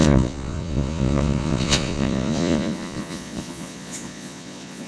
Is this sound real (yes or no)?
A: no